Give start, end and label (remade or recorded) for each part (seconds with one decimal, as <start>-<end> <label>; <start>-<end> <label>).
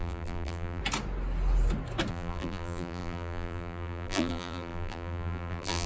0.0-0.8 remade; 0.8-2.1 recorded; 2.1-5.9 remade